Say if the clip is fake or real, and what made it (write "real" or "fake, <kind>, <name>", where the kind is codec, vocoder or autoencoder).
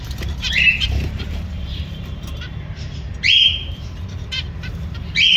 fake, vocoder, BigVGAN v2